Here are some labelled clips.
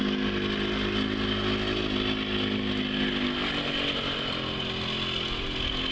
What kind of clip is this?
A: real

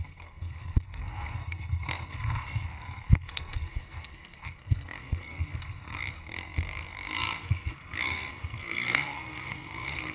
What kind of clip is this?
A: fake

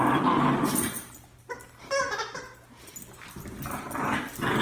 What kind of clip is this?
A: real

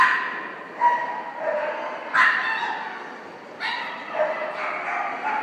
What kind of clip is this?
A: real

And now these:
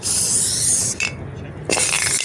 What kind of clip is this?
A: real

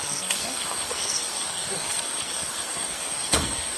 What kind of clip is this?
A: fake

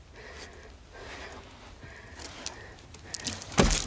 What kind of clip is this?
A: real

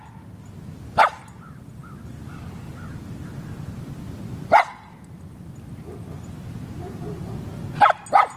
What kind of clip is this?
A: real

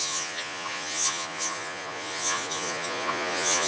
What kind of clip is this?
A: fake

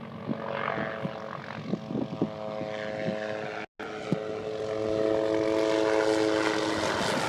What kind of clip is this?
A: real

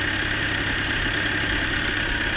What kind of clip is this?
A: fake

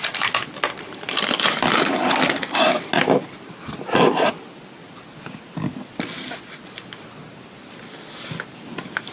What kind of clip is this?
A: real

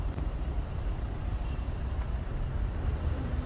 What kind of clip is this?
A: fake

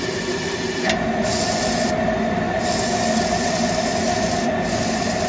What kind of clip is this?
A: real